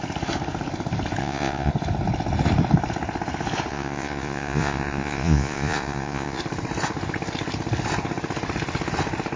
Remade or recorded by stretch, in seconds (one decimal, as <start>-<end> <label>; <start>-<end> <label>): 0.0-1.2 recorded; 1.2-1.7 remade; 1.7-3.7 recorded; 3.7-6.4 remade; 6.4-9.4 recorded